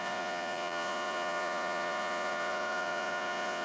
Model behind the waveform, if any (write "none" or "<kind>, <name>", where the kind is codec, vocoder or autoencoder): vocoder, Vocos